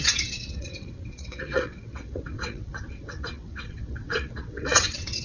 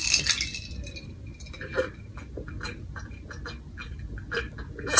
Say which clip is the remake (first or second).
first